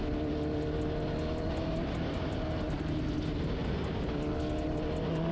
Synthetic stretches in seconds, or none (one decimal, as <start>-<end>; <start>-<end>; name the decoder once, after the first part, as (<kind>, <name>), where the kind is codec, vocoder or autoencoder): none